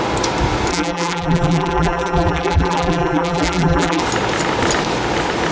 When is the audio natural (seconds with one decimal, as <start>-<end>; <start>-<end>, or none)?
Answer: 0.0-0.7; 4.0-5.5

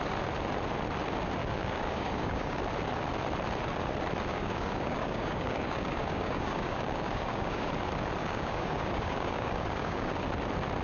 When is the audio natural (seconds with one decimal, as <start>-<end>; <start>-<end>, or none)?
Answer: 0.0-1.4; 2.6-4.3; 7.7-8.2; 10.1-10.8

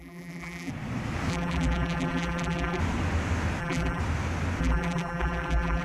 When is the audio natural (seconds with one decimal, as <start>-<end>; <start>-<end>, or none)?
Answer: 0.7-1.3; 2.8-3.6; 4.0-4.6

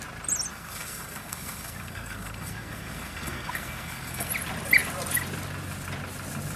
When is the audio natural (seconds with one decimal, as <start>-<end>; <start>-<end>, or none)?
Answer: 0.0-0.5; 4.3-6.6

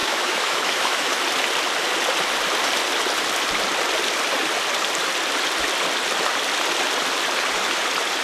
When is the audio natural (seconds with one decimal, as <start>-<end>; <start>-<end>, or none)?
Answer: 1.1-8.2

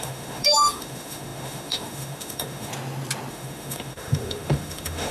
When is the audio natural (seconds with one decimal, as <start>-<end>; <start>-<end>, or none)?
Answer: 2.7-3.3

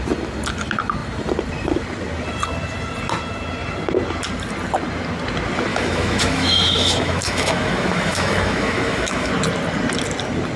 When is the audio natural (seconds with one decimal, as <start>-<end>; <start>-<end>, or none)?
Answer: 0.0-5.7; 9.3-10.6

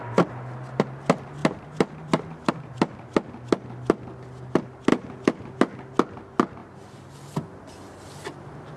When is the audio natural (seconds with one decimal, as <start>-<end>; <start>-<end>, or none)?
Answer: 0.0-1.4; 2.5-4.9; 5.6-6.6; 7.7-8.8